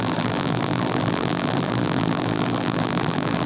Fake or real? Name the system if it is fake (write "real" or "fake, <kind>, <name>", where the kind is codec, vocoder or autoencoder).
fake, vocoder, BigVGAN v2